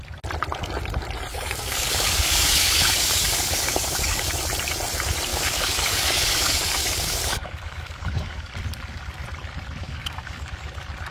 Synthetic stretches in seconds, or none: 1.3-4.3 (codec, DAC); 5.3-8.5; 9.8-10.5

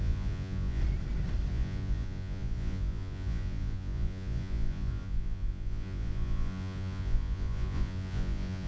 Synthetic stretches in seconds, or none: 0.0-0.8 (vocoder, Vocos); 1.5-8.7

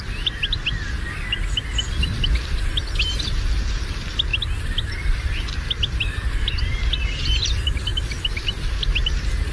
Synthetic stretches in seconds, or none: 7.9-9.5 (vocoder, BigVGAN v2)

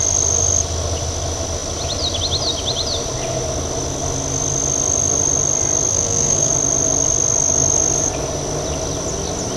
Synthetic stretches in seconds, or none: 5.9-6.5 (codec, SNAC)

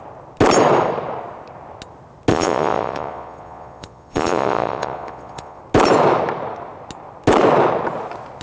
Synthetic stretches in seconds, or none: 2.3-5.6 (vocoder, Vocos)

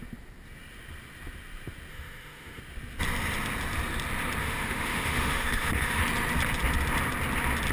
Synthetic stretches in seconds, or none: 1.9-2.6 (autoencoder, DAC-VAE); 4.4-6.0

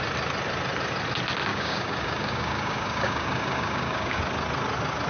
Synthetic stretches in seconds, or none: 1.5-4.2 (codec, DAC)

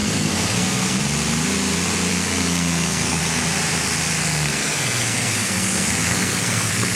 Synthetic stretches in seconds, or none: 0.0-1.0 (codec, SNAC); 2.1-3.2; 4.2-7.0